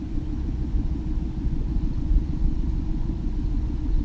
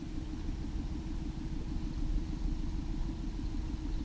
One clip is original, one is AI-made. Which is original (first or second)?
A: second